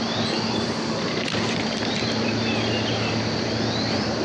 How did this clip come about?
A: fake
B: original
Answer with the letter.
A